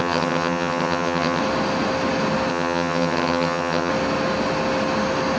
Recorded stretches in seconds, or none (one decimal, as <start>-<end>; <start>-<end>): 1.4-2.5; 3.9-5.4